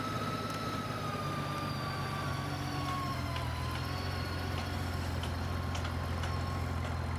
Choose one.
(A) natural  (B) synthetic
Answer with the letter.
A